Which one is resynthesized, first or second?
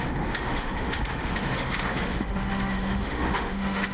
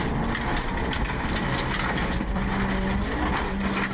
first